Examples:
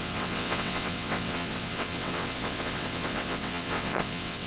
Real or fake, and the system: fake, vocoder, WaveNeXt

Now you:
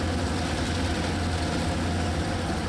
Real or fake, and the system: real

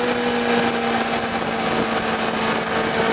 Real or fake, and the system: real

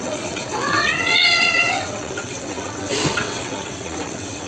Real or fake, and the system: fake, vocoder, WaveNeXt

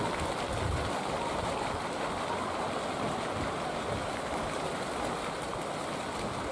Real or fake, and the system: real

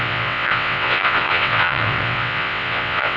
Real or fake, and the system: fake, vocoder, WaveNeXt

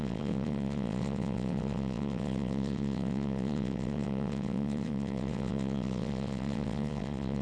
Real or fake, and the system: fake, vocoder, WaveNeXt